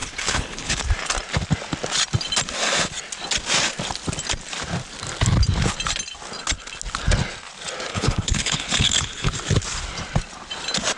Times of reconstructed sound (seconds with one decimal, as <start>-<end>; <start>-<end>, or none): 0.0-0.8; 7.9-9.3